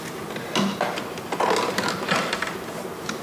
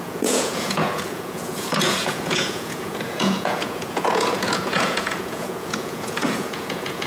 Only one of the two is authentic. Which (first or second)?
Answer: first